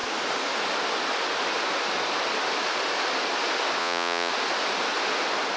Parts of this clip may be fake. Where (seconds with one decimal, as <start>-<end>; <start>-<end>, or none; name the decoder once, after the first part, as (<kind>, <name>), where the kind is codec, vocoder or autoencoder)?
3.8-4.3 (vocoder, Vocos)